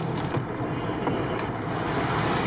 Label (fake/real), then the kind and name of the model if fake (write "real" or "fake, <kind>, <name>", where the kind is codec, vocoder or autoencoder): real